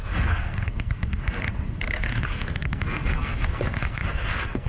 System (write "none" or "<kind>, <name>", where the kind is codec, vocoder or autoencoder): codec, SNAC